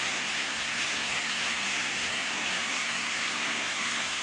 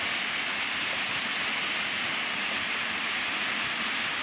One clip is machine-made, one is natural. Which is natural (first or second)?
second